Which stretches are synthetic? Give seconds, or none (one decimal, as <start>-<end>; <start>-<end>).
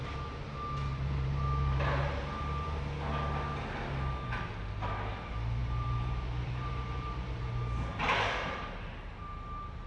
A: 0.9-2.8; 5.6-9.0